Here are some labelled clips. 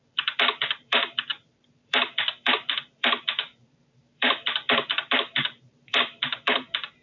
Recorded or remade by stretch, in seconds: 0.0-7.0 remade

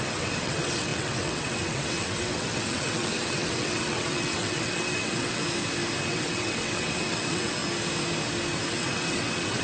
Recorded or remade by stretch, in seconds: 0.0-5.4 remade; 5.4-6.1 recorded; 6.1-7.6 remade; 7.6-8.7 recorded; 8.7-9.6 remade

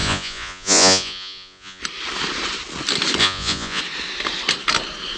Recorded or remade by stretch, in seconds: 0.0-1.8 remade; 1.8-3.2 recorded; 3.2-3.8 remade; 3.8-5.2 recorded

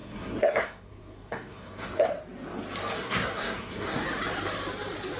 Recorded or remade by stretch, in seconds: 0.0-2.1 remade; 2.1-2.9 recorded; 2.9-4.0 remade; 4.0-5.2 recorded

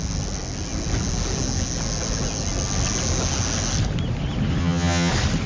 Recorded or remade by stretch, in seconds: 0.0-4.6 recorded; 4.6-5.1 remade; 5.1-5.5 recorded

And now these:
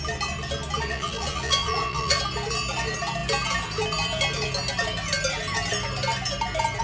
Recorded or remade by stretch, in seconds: 0.0-0.9 recorded; 0.9-2.2 remade; 2.2-6.8 recorded

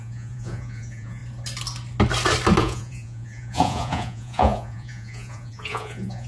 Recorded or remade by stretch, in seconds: 0.0-1.2 remade; 1.2-2.6 recorded; 2.6-6.3 remade

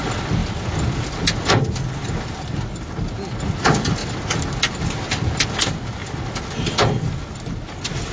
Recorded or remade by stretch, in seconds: 0.0-8.1 recorded